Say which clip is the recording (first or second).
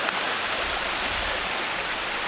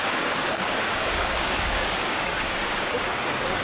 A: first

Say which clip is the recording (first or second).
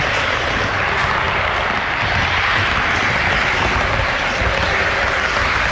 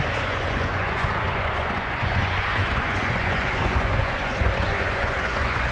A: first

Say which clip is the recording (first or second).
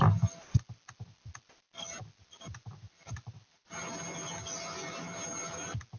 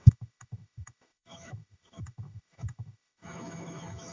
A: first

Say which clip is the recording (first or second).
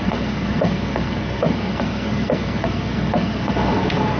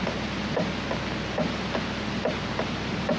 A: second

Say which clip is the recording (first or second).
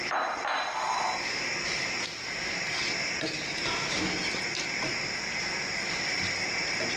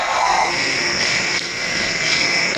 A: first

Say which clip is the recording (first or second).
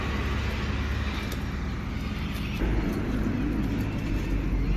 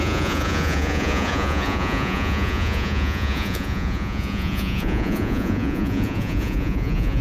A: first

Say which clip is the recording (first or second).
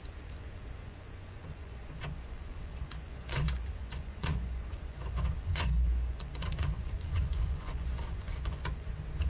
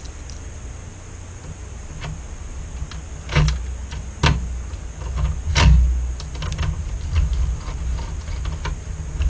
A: second